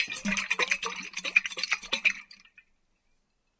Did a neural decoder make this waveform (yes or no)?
no